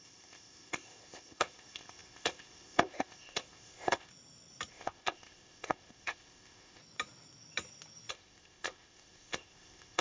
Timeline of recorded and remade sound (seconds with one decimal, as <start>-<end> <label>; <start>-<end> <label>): 0.0-4.1 remade; 4.1-4.7 recorded; 4.7-6.8 remade; 6.8-8.1 recorded; 8.1-10.0 remade